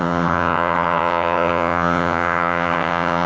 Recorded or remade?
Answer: remade